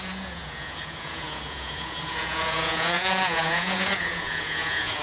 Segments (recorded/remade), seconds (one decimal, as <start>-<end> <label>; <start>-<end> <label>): 0.0-5.0 remade